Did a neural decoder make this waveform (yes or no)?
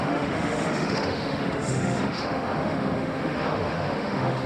yes